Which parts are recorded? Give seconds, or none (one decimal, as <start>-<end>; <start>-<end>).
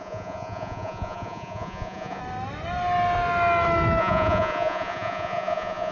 2.2-4.0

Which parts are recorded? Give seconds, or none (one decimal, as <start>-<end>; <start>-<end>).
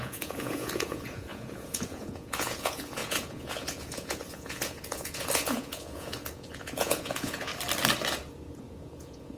7.5-8.5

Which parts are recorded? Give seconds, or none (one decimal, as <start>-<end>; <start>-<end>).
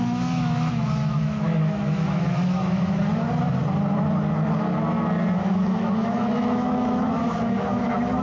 3.0-5.5